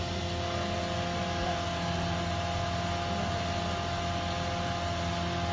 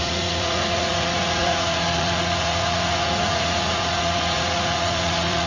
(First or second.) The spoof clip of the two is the second